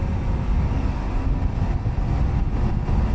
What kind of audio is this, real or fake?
real